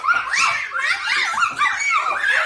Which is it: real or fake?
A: real